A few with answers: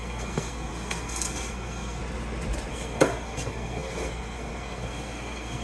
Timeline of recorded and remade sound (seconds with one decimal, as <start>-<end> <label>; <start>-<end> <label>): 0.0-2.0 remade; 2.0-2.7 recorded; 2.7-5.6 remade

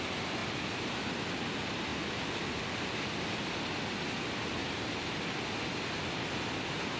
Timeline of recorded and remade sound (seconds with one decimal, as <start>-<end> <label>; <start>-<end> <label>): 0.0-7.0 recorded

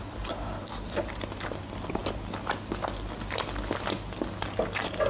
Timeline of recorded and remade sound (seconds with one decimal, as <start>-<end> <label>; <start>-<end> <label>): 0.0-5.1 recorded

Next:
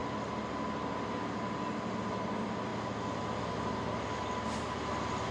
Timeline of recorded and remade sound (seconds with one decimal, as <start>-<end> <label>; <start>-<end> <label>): 0.0-5.3 recorded